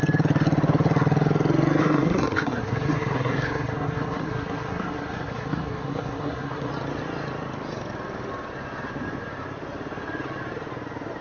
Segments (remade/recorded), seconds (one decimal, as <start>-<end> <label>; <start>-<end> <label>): 0.0-1.8 recorded; 1.8-6.7 remade; 6.7-11.2 recorded